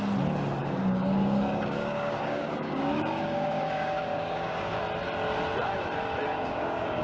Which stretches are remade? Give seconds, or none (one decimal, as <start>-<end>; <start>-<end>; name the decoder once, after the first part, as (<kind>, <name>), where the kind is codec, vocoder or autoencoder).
0.6-4.8 (codec, DAC); 6.3-7.0